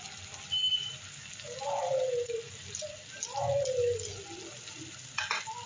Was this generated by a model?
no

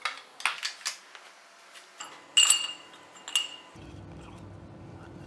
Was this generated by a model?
no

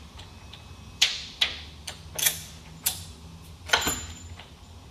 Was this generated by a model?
no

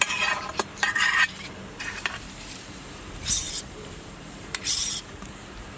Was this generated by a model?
yes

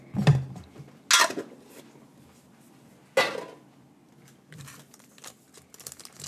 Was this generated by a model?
no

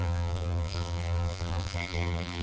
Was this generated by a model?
yes